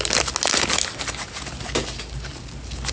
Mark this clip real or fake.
real